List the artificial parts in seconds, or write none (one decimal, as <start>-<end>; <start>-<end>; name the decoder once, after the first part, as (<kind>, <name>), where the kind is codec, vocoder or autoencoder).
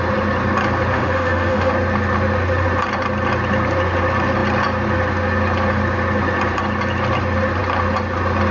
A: 0.9-1.7 (autoencoder, DAC-VAE)